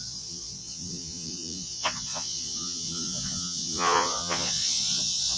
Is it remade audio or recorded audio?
remade